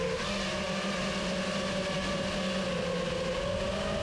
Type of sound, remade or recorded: recorded